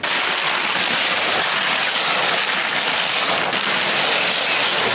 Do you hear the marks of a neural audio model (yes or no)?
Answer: no